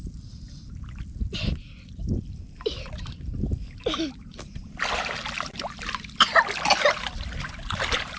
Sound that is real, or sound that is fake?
real